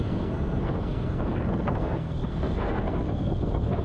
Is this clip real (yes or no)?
no